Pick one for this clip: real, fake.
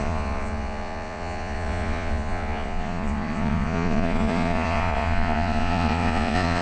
fake